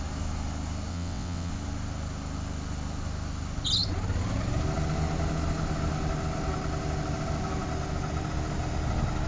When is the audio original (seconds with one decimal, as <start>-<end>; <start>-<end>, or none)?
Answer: 0.0-0.9; 1.5-9.3